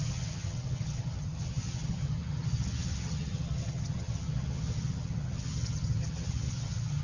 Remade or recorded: remade